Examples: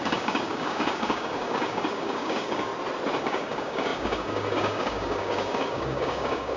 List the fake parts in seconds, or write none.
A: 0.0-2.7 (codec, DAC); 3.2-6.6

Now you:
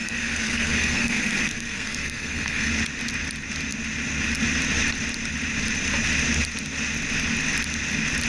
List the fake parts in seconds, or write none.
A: 0.0-2.7 (codec, SNAC)